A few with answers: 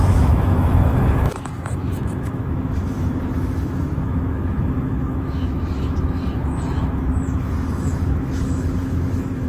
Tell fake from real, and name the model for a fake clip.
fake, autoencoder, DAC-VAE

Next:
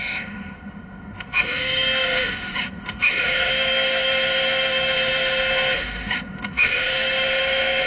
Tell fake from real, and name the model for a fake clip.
fake, autoencoder, DAC-VAE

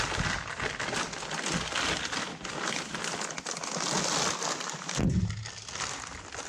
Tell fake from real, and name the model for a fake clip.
real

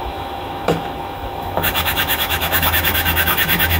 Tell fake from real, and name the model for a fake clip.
fake, autoencoder, DAC-VAE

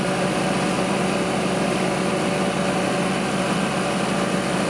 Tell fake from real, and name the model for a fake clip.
real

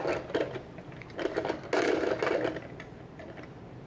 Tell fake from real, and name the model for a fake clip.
real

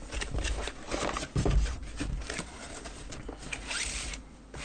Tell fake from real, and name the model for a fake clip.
real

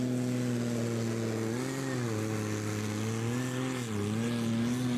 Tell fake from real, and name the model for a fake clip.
real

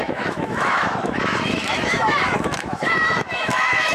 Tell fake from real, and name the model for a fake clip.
fake, autoencoder, DAC-VAE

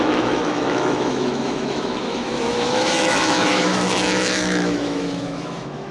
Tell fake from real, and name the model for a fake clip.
fake, autoencoder, DAC-VAE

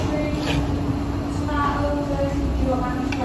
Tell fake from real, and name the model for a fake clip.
real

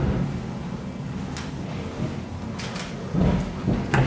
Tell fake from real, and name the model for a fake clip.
real